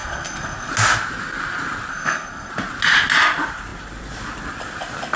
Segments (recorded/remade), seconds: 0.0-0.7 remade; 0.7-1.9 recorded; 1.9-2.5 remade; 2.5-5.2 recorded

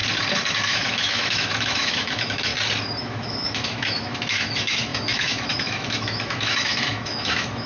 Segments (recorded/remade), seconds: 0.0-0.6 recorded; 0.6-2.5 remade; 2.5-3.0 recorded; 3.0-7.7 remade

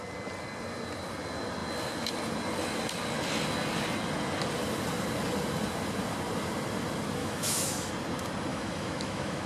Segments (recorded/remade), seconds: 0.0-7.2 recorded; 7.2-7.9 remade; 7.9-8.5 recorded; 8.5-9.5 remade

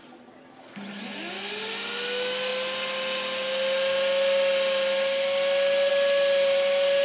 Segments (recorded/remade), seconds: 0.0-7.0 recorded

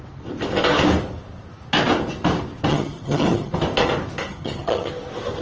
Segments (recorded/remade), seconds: 0.0-2.7 recorded; 2.7-3.5 remade; 3.5-4.3 recorded; 4.3-4.9 remade; 4.9-5.4 recorded